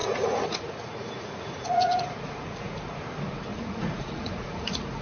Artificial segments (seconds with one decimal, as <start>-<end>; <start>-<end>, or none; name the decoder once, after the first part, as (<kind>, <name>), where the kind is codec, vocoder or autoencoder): 0.0-3.0 (vocoder, Vocos); 3.5-5.0